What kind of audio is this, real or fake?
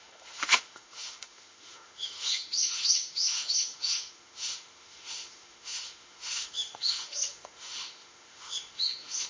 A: fake